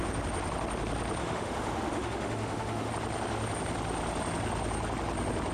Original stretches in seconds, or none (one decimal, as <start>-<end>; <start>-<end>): 0.0-1.2; 2.9-5.5